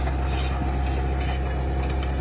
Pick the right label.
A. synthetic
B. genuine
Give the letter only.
B